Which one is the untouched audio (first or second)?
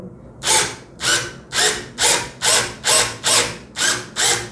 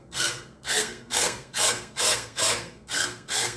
first